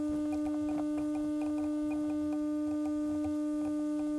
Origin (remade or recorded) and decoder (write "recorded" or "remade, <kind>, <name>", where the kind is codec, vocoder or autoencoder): recorded